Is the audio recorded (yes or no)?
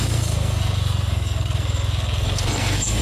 no